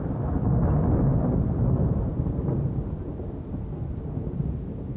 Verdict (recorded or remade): recorded